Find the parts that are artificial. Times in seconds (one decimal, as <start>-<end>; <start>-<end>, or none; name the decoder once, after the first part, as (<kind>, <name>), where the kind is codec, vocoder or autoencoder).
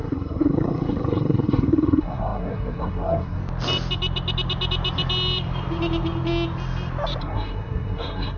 0.0-3.4 (codec, SNAC); 7.2-8.4